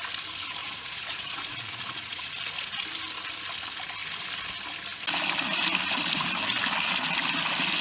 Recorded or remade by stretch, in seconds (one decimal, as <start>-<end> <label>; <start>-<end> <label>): 0.0-0.6 recorded; 0.6-2.3 remade; 2.3-7.8 recorded